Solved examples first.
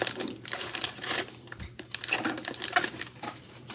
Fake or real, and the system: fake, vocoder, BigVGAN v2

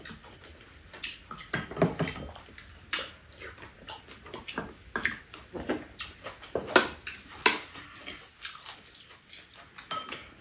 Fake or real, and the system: real